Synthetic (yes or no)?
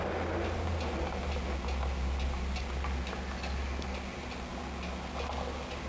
no